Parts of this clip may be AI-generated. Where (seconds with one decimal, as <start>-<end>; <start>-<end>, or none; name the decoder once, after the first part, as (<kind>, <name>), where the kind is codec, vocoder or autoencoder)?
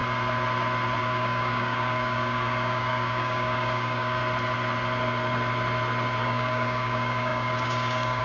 1.0-4.2 (codec, DAC); 6.2-8.2